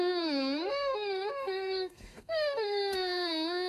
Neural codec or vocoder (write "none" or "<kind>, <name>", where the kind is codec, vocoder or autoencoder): codec, SNAC